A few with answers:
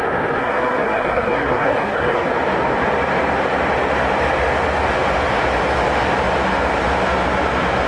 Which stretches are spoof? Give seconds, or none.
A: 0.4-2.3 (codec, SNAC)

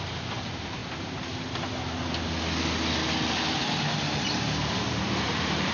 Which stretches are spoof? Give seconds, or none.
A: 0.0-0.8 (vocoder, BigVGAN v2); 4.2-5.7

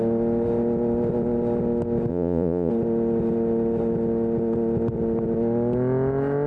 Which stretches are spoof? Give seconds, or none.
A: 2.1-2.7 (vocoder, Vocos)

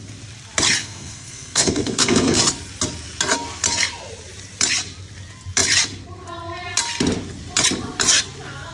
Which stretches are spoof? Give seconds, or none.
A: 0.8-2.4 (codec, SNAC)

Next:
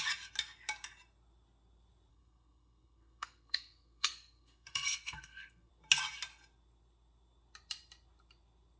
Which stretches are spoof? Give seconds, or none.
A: 2.1-5.7 (codec, SNAC)